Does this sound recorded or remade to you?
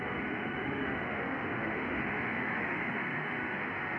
remade